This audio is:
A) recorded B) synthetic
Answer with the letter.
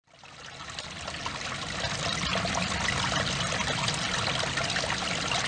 A